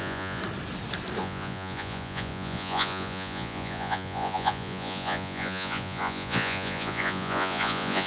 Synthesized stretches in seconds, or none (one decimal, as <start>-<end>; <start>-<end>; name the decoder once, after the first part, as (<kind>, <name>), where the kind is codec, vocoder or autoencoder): 0.0-0.4 (vocoder, Vocos); 1.2-8.1